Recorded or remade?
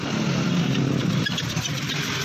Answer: remade